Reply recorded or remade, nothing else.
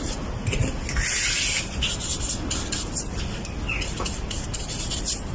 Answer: recorded